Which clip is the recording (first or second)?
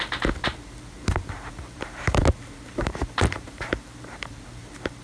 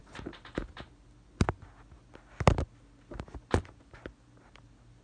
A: second